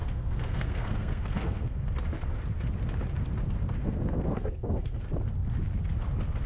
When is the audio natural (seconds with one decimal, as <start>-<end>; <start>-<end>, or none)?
1.9-3.8; 5.0-6.5